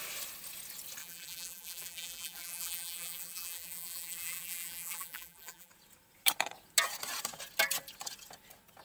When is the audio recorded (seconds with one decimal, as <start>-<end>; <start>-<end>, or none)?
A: 0.0-1.0; 5.7-8.8